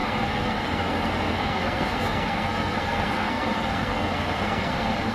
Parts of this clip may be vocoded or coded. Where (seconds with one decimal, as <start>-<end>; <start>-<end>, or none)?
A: 0.0-5.1